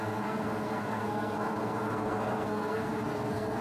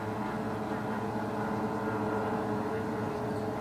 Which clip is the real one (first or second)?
second